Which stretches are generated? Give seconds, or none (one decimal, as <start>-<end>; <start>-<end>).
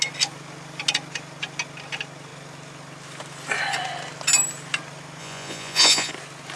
5.2-6.1